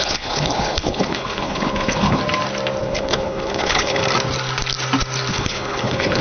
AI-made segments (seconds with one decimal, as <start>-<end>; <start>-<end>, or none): 0.0-2.2; 2.8-4.0; 5.3-6.2